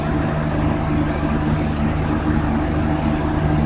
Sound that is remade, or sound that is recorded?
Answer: recorded